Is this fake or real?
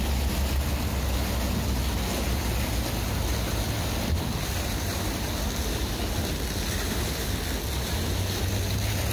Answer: real